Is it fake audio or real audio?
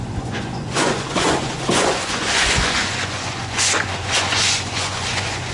fake